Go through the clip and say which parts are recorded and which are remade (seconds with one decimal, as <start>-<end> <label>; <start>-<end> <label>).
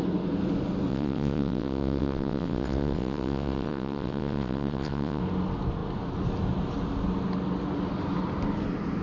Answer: 0.0-0.9 recorded; 0.9-5.2 remade; 5.2-9.0 recorded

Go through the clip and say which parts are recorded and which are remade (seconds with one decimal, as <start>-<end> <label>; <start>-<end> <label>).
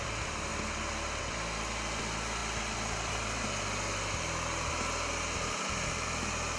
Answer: 0.0-6.6 recorded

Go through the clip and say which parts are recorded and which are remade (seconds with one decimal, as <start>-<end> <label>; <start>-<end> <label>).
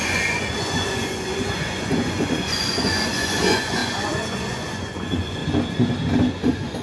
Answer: 0.0-5.4 remade; 5.4-6.3 recorded; 6.3-6.8 remade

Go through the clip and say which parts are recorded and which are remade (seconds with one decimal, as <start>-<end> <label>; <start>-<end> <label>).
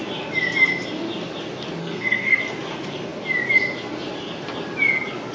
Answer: 0.0-1.8 recorded; 1.8-2.4 remade; 2.4-5.3 recorded